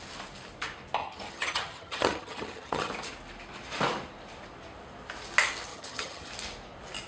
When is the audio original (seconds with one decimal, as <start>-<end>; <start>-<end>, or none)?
0.0-1.0; 2.9-5.7; 6.3-7.1